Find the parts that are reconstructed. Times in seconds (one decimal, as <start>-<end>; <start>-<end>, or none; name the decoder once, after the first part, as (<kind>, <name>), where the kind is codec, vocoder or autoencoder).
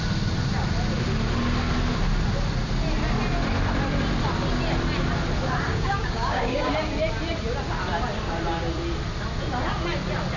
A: 5.7-6.7 (codec, DAC)